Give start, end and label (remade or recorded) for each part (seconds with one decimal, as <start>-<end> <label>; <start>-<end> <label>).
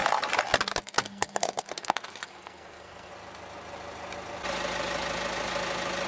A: 0.0-0.8 recorded; 0.8-3.1 remade; 3.1-6.1 recorded